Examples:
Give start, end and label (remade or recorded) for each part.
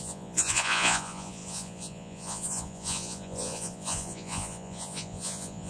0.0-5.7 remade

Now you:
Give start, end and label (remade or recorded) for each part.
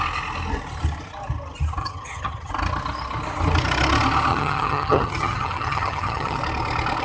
0.0-1.8 recorded; 1.8-2.5 remade; 2.5-4.3 recorded; 4.3-6.4 remade; 6.4-7.0 recorded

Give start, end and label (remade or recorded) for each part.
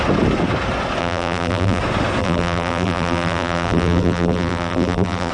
0.0-1.0 recorded; 1.0-1.8 remade; 1.8-2.2 recorded; 2.2-5.3 remade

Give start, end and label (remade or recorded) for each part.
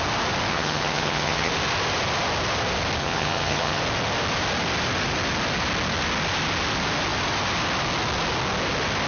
0.0-0.5 recorded; 0.5-1.5 remade; 1.5-3.0 recorded; 3.0-3.8 remade; 3.8-9.1 recorded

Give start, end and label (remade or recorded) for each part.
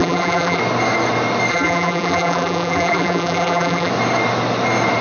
0.0-0.6 remade; 0.6-1.5 recorded; 1.5-3.9 remade; 3.9-5.0 recorded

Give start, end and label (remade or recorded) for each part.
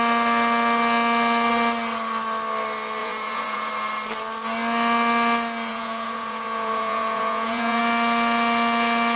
0.0-3.0 recorded; 3.0-3.7 remade; 3.7-5.7 recorded; 5.7-7.8 remade; 7.8-9.2 recorded